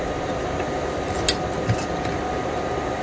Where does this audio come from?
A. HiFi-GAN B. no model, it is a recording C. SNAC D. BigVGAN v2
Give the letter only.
B